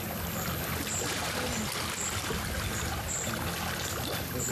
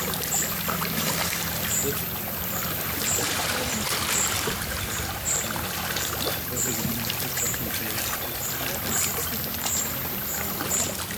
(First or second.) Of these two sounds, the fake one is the second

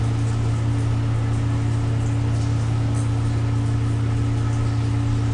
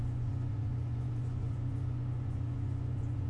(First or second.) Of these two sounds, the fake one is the second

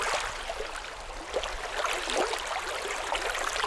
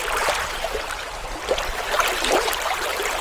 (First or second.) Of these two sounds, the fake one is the second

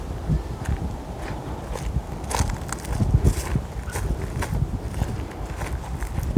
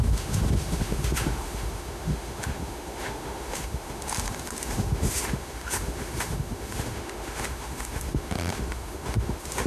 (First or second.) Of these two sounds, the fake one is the second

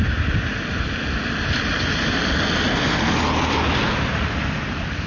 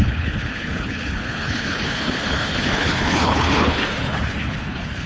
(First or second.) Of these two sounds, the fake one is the second